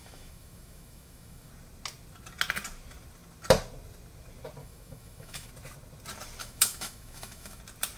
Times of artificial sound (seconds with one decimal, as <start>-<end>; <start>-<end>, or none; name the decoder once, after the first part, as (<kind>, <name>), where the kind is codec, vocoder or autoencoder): 0.0-1.5 (autoencoder, DAC-VAE); 4.6-5.5; 6.4-7.6